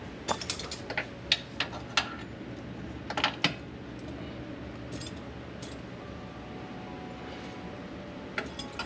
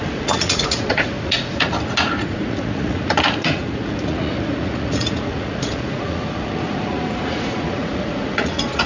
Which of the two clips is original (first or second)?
first